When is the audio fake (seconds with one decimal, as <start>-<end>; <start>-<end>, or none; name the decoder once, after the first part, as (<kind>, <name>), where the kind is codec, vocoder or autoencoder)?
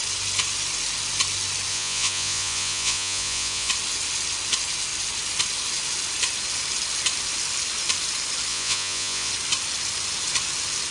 1.7-3.7 (vocoder, Vocos); 8.5-9.3